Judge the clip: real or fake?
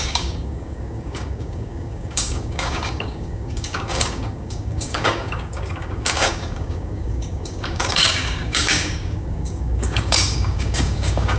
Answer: fake